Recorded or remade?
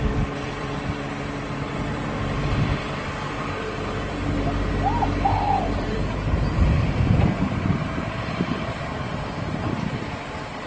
remade